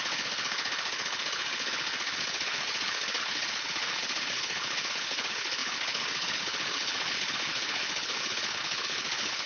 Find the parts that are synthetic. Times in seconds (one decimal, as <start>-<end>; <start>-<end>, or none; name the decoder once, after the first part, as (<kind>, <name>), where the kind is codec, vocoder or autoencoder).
0.0-9.5 (codec, HILCodec)